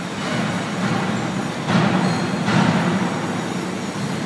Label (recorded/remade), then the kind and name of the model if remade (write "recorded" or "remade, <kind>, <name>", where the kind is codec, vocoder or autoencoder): recorded